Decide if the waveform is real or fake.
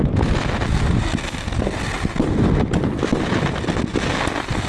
real